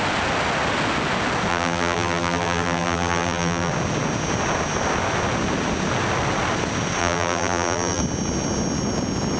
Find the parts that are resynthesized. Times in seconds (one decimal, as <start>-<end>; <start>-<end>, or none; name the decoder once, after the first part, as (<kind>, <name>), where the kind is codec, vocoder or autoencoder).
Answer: 1.5-3.7 (vocoder, BigVGAN v2); 7.0-8.0